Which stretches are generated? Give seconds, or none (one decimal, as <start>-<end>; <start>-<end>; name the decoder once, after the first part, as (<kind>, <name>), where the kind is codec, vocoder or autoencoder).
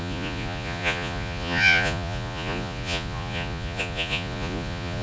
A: 0.0-5.0 (vocoder, Vocos)